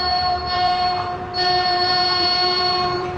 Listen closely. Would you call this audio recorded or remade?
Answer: remade